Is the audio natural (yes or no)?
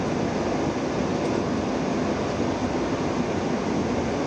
yes